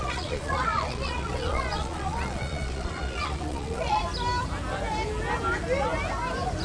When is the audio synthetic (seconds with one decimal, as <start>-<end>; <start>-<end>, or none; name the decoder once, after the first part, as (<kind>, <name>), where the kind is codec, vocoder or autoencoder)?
0.0-4.0 (vocoder, Vocos)